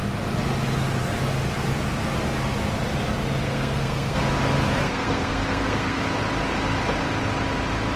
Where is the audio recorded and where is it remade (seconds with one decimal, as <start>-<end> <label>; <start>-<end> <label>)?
0.0-3.4 recorded; 3.4-4.2 remade; 4.2-4.8 recorded; 4.8-6.0 remade; 6.0-8.0 recorded